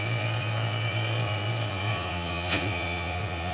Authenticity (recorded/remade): remade